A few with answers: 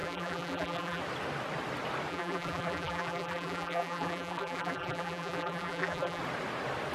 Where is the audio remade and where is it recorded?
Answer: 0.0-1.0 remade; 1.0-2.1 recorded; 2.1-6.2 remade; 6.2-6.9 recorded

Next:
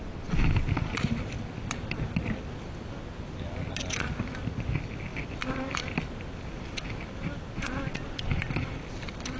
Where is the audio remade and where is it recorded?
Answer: 0.0-9.4 recorded

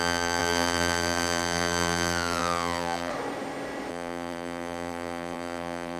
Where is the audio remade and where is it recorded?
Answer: 0.0-3.1 remade; 3.1-3.9 recorded; 3.9-6.0 remade

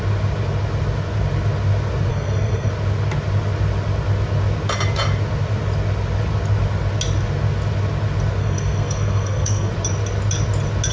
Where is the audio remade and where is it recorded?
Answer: 0.0-2.1 recorded; 2.1-2.7 remade; 2.7-8.4 recorded; 8.4-9.7 remade; 9.7-10.9 recorded

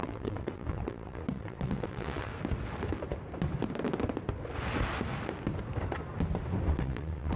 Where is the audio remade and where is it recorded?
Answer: 0.0-2.3 remade; 2.3-6.7 recorded; 6.7-7.4 remade

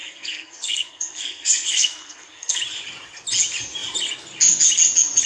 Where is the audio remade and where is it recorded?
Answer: 0.0-2.6 remade; 2.6-5.3 recorded